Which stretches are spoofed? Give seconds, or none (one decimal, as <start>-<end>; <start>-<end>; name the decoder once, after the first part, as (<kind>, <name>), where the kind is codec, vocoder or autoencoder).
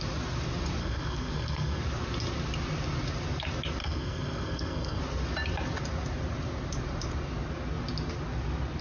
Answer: 0.8-1.8 (codec, SNAC); 3.8-5.0